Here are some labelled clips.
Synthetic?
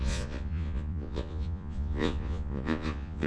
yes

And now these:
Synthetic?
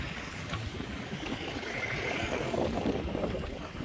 yes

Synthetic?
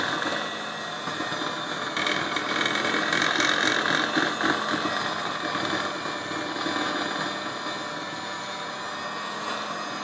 no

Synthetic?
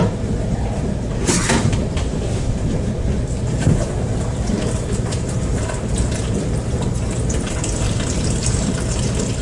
yes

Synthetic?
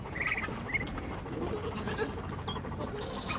no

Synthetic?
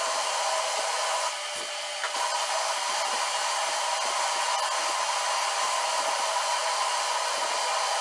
no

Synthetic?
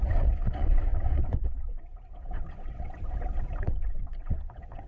yes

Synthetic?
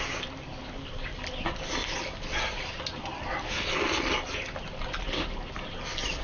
no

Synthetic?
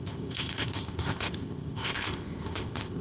yes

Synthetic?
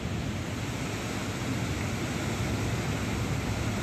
no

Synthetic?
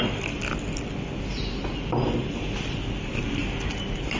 no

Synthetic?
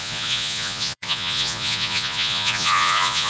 yes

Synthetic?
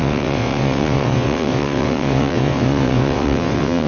yes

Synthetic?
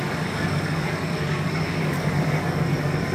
yes